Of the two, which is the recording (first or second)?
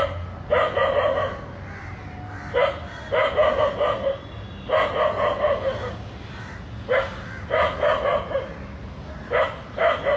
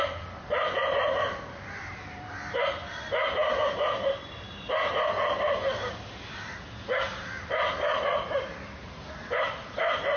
first